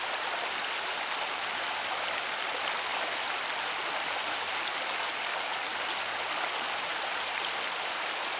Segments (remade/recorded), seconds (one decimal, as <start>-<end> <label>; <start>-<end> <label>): 0.0-6.9 recorded; 6.9-7.9 remade; 7.9-8.4 recorded